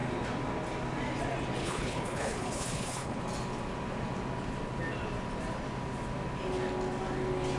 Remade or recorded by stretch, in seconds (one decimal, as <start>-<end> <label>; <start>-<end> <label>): 0.0-1.6 recorded; 1.6-3.2 remade; 3.2-7.6 recorded